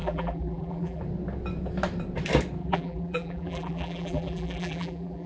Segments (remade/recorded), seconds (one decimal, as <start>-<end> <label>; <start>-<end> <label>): 0.0-1.0 remade; 1.0-2.6 recorded; 2.6-5.3 remade